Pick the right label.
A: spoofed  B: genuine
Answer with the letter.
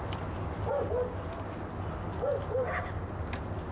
B